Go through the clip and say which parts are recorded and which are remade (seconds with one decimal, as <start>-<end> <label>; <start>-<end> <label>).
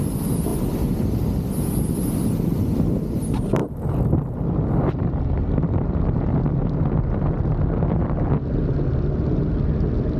0.0-10.2 recorded